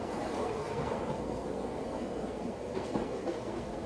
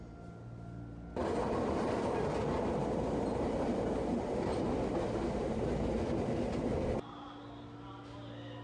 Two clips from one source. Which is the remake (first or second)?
first